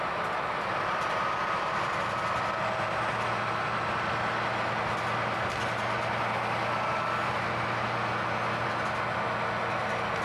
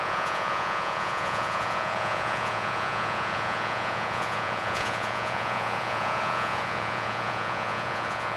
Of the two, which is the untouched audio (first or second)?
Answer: first